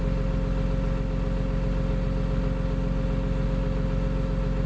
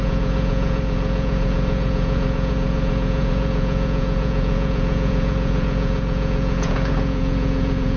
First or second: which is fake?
second